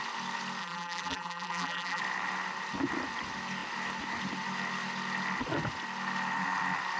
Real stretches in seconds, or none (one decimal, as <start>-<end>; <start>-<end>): 0.0-0.6; 2.0-7.0